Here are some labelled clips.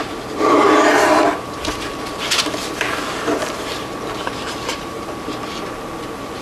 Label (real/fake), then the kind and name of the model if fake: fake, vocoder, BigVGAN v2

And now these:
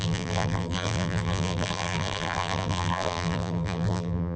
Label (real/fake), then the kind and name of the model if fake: fake, vocoder, BigVGAN v2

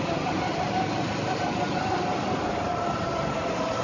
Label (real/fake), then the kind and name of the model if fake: fake, vocoder, BigVGAN v2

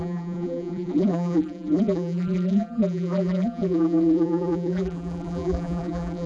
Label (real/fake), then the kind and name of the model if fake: fake, vocoder, BigVGAN v2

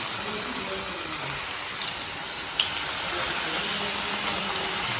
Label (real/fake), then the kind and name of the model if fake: real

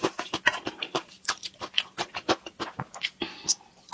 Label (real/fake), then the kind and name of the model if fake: real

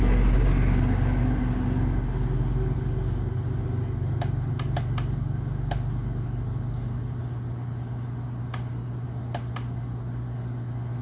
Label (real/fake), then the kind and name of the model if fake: real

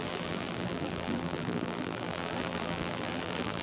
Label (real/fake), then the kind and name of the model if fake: fake, vocoder, BigVGAN v2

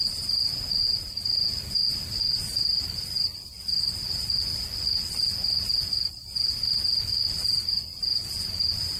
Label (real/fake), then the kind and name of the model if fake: real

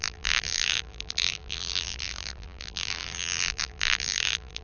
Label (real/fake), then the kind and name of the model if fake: fake, vocoder, BigVGAN v2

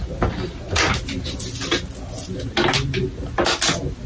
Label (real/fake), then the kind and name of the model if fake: real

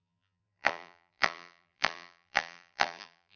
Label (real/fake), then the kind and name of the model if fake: fake, vocoder, BigVGAN v2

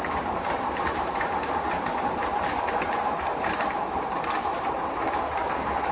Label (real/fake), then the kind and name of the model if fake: fake, vocoder, BigVGAN v2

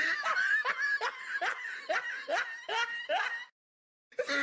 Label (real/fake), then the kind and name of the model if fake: real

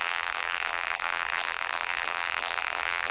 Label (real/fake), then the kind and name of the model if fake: fake, vocoder, BigVGAN v2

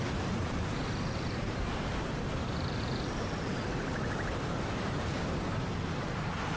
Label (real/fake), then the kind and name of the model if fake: fake, vocoder, BigVGAN v2